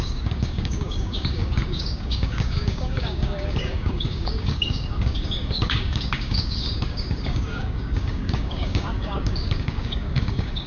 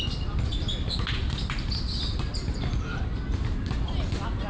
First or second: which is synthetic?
first